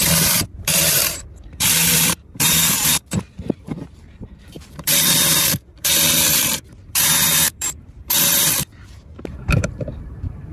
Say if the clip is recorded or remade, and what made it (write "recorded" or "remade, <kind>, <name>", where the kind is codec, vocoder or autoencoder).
remade, vocoder, BigVGAN v2